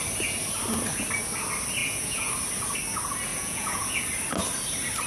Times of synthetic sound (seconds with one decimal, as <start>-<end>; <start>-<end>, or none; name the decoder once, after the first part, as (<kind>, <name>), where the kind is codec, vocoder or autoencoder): 1.8-2.3 (vocoder, Vocos); 3.3-4.0